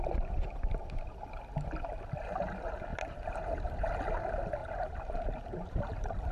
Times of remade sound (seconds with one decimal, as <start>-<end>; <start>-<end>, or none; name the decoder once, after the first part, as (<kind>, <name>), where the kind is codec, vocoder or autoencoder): 4.6-6.3 (vocoder, BigVGAN v2)